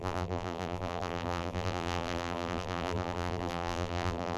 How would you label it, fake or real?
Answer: fake